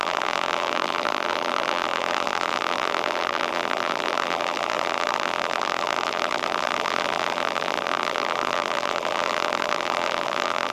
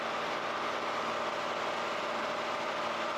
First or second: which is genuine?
second